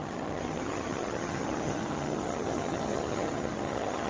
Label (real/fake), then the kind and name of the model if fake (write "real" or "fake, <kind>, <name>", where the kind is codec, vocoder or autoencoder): fake, vocoder, HiFi-GAN